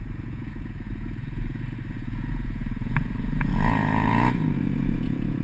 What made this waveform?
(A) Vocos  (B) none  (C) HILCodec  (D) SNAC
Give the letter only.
A